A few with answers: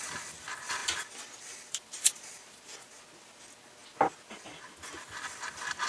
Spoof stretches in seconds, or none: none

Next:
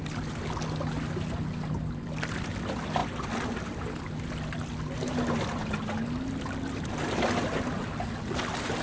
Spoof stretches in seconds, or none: none